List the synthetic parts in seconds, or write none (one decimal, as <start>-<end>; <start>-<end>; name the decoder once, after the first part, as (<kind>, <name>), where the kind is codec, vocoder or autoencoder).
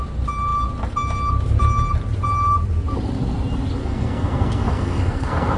3.8-5.6 (codec, SNAC)